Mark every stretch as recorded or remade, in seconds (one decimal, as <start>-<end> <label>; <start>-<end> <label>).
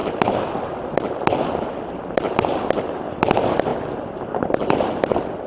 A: 0.0-5.5 recorded